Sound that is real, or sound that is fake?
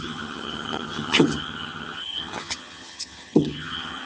fake